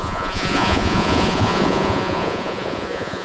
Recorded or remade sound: remade